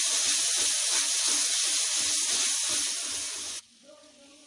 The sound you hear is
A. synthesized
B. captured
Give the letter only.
A